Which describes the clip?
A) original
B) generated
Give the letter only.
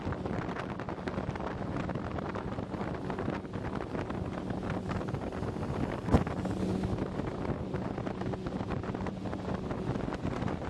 A